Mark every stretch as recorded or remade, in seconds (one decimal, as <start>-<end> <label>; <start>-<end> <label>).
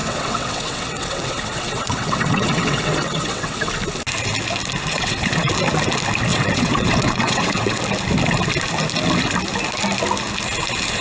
0.0-3.7 remade; 3.7-4.9 recorded; 4.9-5.5 remade; 5.5-6.3 recorded; 6.3-7.8 remade; 7.8-11.0 recorded